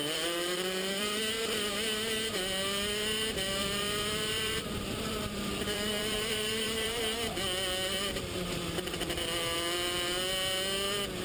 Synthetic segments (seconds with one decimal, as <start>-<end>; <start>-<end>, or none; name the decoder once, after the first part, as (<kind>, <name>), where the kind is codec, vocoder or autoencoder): 0.0-1.2 (vocoder, BigVGAN v2); 3.6-7.0